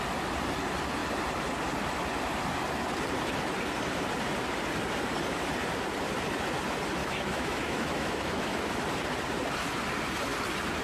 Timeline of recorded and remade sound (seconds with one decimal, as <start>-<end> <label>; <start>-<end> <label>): 0.0-7.0 recorded; 7.0-8.7 remade; 8.7-10.8 recorded